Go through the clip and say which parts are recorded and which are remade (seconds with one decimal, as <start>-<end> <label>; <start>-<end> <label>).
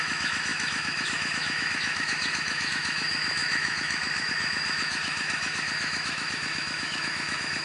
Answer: 0.0-7.6 remade